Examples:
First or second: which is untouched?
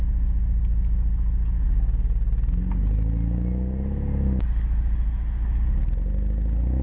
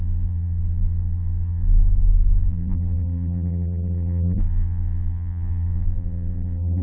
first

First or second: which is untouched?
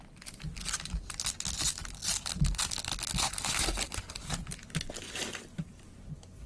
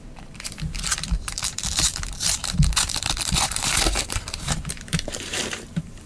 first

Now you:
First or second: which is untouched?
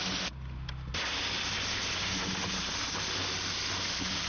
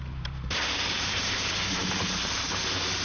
first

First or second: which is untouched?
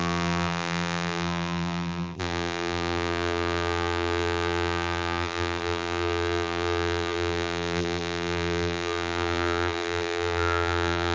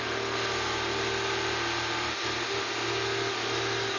second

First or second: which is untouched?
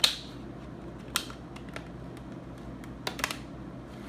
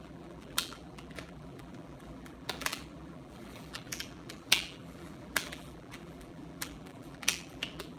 first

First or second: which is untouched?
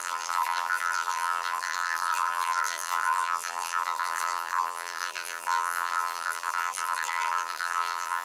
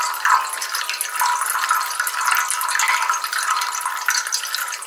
second